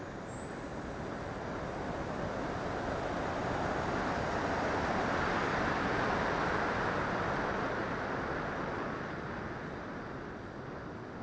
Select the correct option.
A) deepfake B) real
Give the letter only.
B